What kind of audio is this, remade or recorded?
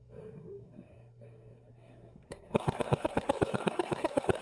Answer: remade